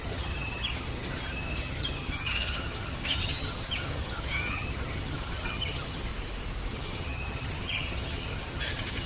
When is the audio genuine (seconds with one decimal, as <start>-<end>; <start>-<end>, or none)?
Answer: 6.1-6.7